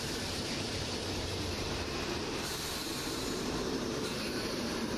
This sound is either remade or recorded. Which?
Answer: remade